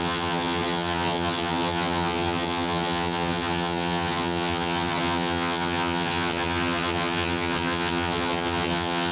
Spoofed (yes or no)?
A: yes